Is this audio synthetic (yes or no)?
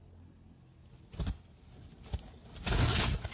no